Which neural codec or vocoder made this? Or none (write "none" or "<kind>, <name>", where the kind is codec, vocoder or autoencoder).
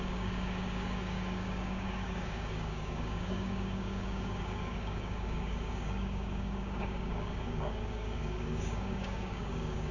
codec, DAC